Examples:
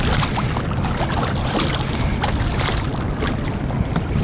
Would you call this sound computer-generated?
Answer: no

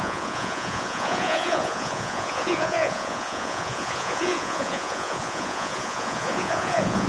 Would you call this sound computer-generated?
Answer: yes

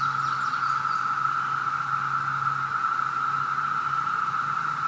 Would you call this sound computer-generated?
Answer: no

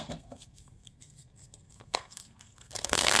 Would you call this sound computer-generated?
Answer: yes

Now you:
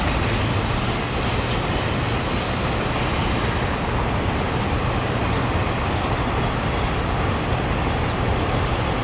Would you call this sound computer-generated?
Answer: no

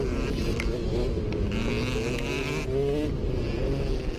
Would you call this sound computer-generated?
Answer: no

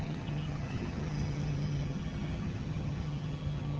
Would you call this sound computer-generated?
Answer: yes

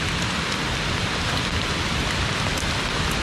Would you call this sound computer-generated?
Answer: no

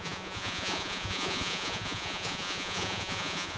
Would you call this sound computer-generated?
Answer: yes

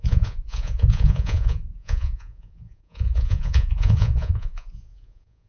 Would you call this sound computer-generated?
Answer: yes